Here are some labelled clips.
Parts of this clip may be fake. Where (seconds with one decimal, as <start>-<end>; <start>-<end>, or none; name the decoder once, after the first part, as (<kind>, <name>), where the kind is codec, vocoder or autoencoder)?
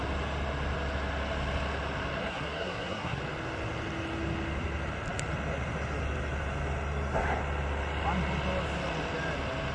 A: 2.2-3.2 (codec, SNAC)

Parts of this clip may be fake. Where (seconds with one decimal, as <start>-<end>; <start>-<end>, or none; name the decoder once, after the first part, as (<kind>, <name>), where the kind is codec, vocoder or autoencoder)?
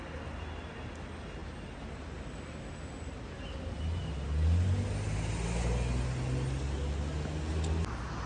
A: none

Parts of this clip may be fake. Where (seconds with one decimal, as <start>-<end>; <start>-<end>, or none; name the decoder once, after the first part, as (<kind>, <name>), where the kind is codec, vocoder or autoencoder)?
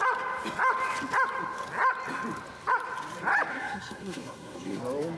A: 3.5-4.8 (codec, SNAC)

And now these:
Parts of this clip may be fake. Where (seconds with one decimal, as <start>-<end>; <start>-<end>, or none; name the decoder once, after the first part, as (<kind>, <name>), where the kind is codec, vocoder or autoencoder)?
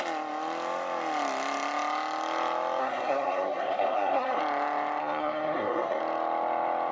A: 2.8-4.4 (codec, SNAC); 5.0-6.0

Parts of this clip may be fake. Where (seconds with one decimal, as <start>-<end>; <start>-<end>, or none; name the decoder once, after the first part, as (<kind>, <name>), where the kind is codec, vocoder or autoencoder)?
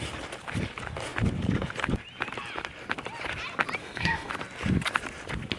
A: 3.8-4.3 (codec, SNAC)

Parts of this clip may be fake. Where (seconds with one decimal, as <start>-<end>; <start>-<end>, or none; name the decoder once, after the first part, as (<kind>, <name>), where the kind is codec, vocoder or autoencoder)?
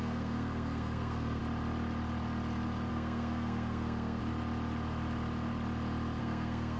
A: 0.0-1.4 (codec, SNAC); 2.9-4.2; 6.2-6.8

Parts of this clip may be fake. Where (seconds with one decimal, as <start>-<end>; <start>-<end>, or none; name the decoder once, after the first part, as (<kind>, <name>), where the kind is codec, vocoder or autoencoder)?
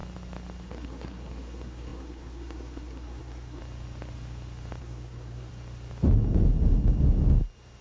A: 0.6-3.6 (codec, SNAC); 4.8-5.5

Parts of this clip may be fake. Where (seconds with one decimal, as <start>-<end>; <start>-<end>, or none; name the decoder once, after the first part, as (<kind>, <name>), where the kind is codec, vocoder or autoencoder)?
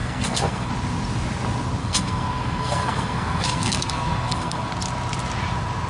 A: 0.0-0.7 (codec, SNAC); 1.8-4.7